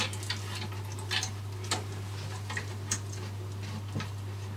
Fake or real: real